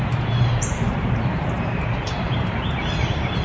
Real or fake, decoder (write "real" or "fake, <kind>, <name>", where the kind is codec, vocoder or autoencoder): fake, vocoder, BigVGAN v2